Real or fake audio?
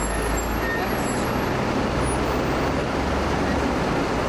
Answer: real